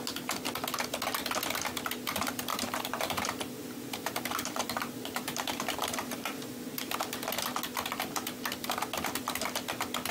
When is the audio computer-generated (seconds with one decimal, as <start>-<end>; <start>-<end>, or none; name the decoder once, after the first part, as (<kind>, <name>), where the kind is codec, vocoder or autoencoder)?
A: 2.5-7.0 (vocoder, BigVGAN v2)